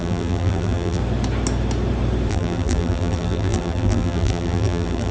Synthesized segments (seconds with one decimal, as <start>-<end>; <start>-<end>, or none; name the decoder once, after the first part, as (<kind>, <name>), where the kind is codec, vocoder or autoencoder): 0.0-1.0 (vocoder, BigVGAN v2); 2.3-5.1